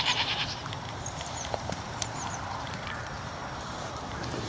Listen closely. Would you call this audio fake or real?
fake